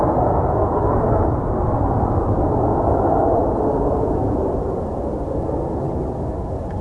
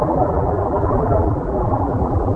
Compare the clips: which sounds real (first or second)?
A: first